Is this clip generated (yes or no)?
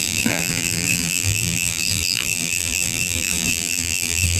yes